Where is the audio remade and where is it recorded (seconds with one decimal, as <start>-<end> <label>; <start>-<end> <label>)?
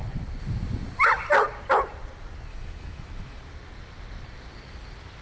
0.0-2.5 recorded; 2.5-3.4 remade; 3.4-5.2 recorded